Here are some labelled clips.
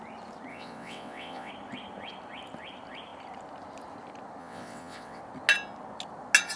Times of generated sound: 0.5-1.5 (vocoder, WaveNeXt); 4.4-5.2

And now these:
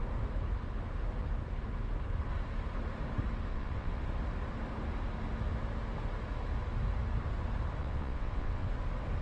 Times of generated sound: 3.5-4.0 (vocoder, WaveNeXt); 7.8-8.7

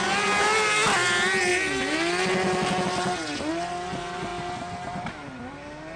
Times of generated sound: none

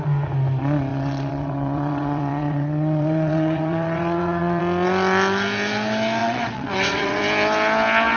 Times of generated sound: 0.9-4.6 (vocoder, WaveNeXt); 6.2-7.2

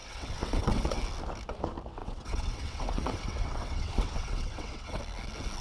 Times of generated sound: 0.0-1.0 (vocoder, WaveNeXt); 2.0-5.0

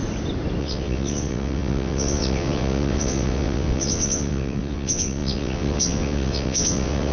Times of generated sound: 0.6-7.1 (vocoder, WaveNeXt)